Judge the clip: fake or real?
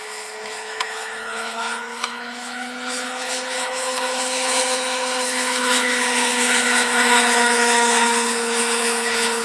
fake